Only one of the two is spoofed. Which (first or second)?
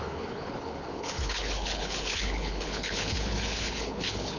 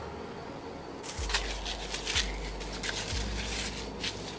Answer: first